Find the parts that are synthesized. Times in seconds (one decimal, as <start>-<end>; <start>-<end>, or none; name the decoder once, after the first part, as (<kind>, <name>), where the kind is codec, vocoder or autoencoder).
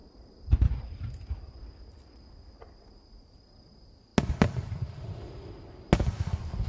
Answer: 0.0-0.7 (vocoder, BigVGAN v2)